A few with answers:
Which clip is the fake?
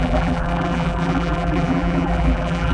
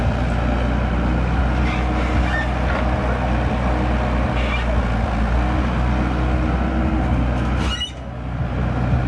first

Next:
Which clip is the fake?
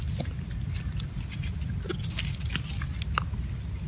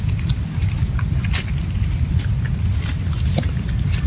second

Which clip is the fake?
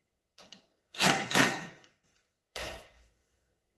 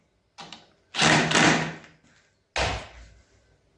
first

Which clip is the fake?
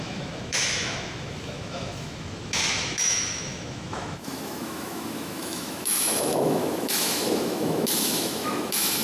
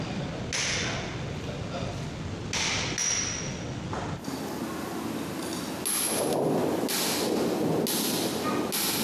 first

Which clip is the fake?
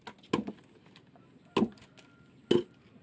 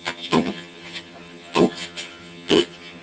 second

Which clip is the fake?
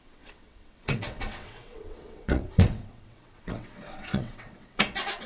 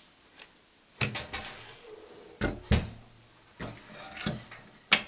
first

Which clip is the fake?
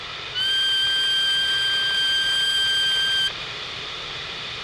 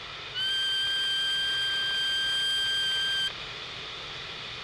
first